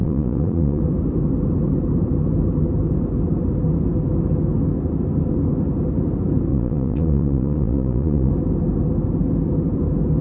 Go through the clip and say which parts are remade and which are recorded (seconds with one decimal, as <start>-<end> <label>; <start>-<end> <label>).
0.0-0.8 remade; 0.8-6.5 recorded; 6.5-8.3 remade; 8.3-10.2 recorded